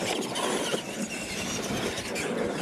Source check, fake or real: real